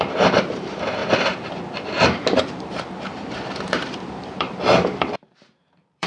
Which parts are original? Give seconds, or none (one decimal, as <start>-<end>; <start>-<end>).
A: 1.0-2.5